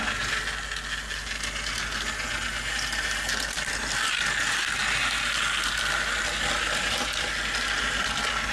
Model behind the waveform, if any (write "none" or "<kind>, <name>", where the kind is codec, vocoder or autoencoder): none